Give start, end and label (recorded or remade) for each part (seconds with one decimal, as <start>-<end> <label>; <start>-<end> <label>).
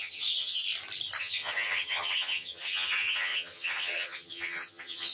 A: 0.0-0.6 remade; 0.6-1.2 recorded; 1.2-5.1 remade